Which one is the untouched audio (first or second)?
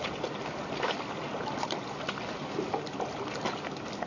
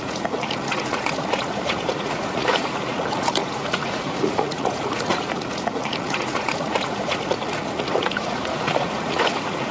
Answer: first